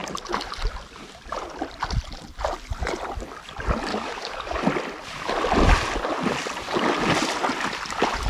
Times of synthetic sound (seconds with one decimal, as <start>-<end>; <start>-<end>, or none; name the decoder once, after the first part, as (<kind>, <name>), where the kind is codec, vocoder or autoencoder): 3.9-4.6 (codec, DAC)